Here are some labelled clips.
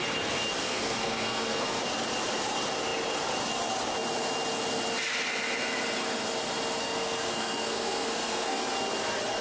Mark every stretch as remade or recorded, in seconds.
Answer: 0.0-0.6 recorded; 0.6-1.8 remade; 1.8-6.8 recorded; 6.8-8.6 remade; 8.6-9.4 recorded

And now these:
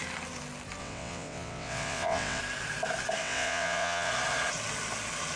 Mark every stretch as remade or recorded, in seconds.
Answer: 0.0-0.8 recorded; 0.8-2.4 remade; 2.4-3.2 recorded; 3.2-4.1 remade; 4.1-5.4 recorded